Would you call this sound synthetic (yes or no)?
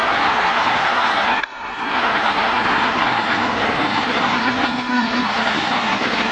yes